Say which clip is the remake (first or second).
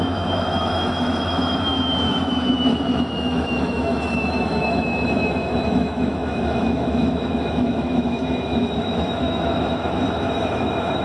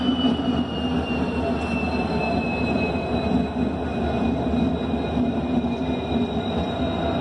first